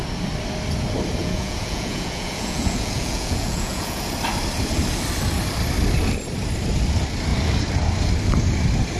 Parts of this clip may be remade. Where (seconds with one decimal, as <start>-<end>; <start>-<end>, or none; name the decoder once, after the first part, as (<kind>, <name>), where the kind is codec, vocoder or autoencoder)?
1.2-4.1 (vocoder, Vocos)